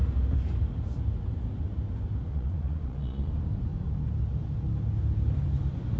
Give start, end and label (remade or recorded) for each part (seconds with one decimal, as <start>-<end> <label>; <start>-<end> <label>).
0.0-2.3 recorded; 2.3-3.3 remade; 3.3-6.0 recorded